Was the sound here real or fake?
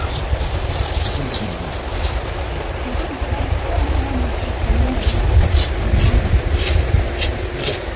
fake